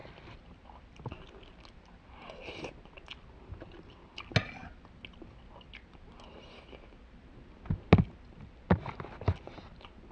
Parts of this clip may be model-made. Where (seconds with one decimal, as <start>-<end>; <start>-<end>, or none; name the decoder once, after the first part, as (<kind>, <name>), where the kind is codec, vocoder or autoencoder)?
none

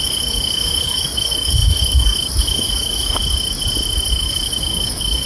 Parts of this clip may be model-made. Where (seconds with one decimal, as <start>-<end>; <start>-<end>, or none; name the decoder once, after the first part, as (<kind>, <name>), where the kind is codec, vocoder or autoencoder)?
0.0-3.2 (codec, DAC); 4.1-5.3

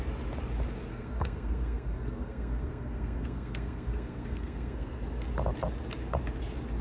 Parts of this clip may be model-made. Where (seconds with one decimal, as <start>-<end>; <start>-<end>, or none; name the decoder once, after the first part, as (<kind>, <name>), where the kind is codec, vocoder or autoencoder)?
0.9-5.0 (codec, SNAC)

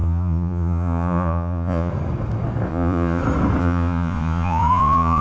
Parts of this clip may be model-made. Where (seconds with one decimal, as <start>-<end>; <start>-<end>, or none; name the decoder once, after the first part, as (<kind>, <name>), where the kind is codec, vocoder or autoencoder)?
0.0-1.9 (vocoder, Vocos); 2.7-3.2; 3.6-5.2

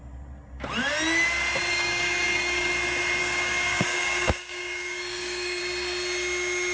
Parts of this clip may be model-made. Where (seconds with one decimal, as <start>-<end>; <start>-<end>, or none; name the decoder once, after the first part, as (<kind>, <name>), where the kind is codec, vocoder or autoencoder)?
1.7-2.7 (codec, DAC); 3.2-5.6

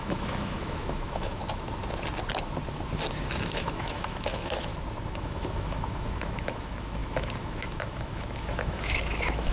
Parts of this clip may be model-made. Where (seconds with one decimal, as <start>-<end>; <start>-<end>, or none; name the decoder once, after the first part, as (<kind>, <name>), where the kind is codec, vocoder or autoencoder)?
0.0-1.4 (autoencoder, DAC-VAE); 3.4-4.7; 5.2-9.5

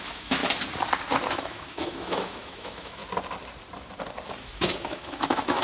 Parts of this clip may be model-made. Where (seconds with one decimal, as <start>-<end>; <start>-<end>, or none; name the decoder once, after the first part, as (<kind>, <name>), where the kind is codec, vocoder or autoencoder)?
0.0-0.4 (autoencoder, DAC-VAE); 1.3-3.0; 4.4-5.6